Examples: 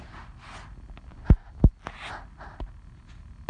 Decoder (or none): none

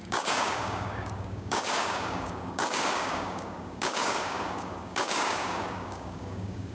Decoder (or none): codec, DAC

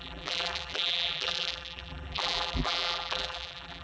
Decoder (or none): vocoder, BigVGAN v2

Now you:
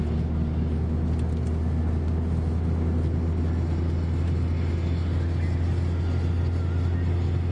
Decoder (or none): none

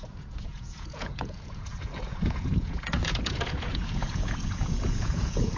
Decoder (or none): vocoder, Vocos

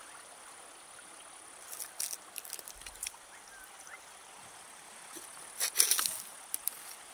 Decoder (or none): none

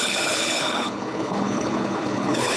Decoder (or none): codec, HILCodec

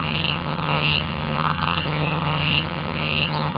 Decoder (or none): vocoder, HiFi-GAN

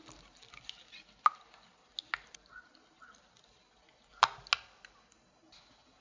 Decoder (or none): none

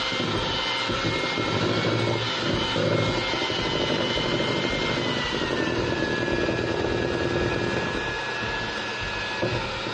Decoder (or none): none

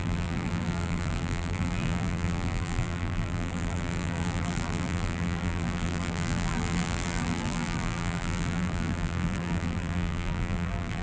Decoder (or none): vocoder, BigVGAN v2